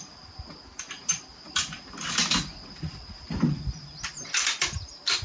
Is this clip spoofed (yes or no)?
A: no